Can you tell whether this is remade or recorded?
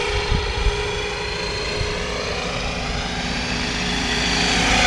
recorded